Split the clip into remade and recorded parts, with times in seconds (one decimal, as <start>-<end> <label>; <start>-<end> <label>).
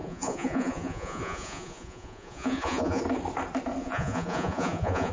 0.0-3.0 remade; 3.0-3.8 recorded; 3.8-5.1 remade